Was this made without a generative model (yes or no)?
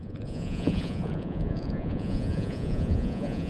no